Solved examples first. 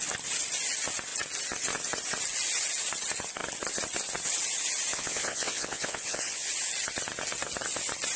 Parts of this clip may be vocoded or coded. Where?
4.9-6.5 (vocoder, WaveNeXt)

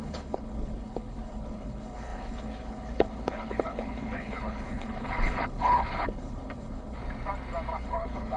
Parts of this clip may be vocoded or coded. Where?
0.0-7.0 (codec, HILCodec); 7.7-8.4

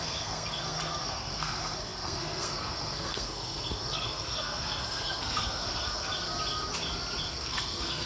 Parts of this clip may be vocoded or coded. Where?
0.0-6.1 (codec, SNAC); 7.3-8.1